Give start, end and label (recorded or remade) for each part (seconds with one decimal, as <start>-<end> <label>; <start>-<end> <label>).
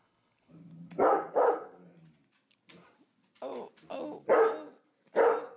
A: 0.0-0.5 remade; 0.5-1.3 recorded; 1.3-1.8 remade; 1.8-5.6 recorded